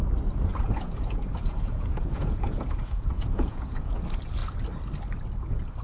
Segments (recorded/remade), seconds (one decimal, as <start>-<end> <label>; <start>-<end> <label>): 0.0-0.5 recorded; 0.5-4.0 remade; 4.0-5.8 recorded